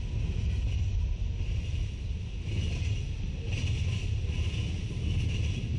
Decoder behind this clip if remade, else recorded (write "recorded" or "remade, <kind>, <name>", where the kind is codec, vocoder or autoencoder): recorded